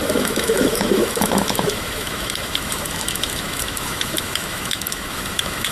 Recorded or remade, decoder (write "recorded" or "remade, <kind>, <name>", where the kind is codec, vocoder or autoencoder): remade, autoencoder, DAC-VAE